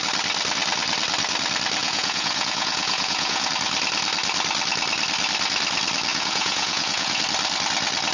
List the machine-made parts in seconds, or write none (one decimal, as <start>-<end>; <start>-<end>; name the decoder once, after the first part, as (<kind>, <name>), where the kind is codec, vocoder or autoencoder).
1.8-3.5 (vocoder, Vocos); 6.1-7.2